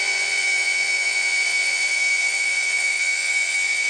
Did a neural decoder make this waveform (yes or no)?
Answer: yes